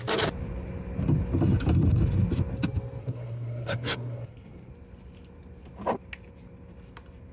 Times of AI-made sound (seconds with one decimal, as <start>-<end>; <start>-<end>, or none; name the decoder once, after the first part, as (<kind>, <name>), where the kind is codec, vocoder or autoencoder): 3.0-4.7 (codec, SNAC)